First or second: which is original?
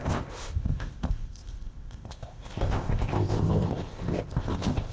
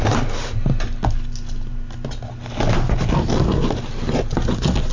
second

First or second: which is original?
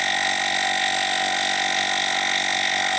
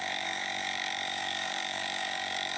first